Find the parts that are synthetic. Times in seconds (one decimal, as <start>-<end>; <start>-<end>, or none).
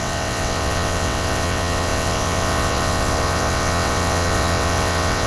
0.0-5.3